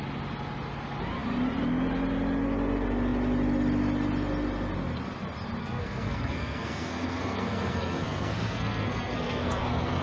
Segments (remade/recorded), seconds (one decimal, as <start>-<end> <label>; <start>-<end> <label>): 0.0-5.6 recorded; 5.6-10.0 remade